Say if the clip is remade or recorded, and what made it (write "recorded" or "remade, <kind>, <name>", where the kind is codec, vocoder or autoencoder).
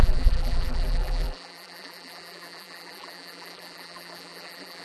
remade, vocoder, BigVGAN v2